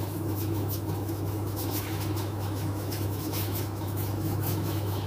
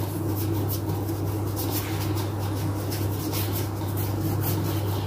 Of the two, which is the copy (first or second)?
first